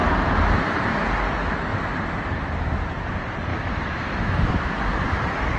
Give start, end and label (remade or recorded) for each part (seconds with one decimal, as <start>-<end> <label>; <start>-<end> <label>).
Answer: 0.0-3.5 recorded; 3.5-4.5 remade; 4.5-5.6 recorded